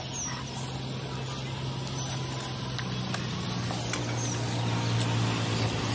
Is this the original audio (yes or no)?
yes